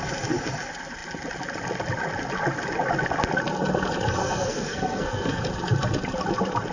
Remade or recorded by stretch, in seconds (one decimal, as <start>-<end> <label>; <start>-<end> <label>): 0.0-4.2 recorded; 4.2-5.4 remade; 5.4-6.7 recorded